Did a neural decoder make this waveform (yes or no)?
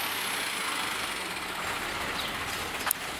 no